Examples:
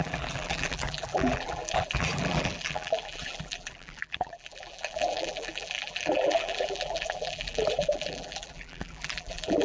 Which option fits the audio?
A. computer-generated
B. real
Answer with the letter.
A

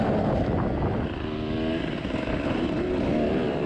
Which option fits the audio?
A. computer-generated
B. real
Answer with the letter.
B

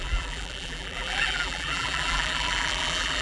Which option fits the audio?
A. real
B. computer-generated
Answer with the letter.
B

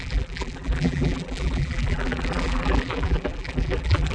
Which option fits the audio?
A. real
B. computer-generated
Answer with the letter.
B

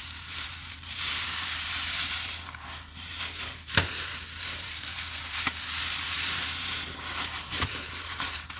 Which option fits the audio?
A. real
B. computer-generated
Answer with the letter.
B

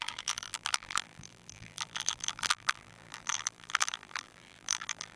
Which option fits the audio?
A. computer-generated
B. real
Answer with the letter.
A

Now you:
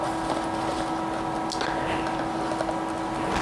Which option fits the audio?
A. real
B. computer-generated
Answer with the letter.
A